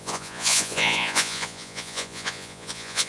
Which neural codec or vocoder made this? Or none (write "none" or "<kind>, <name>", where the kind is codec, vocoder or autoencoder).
vocoder, Vocos